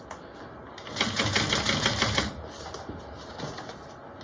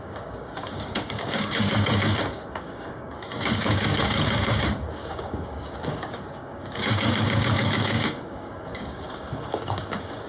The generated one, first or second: second